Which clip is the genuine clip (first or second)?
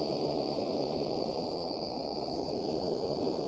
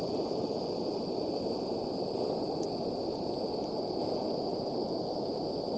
second